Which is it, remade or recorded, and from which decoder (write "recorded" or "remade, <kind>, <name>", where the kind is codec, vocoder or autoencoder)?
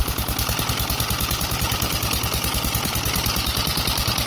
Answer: recorded